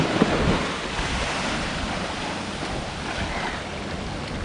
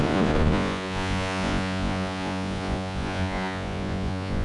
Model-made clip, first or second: second